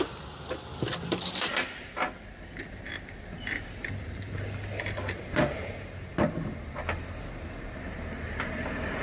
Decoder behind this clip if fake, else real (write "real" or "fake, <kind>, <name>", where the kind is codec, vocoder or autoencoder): real